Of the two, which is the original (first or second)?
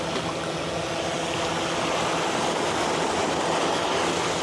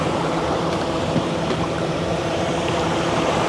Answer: first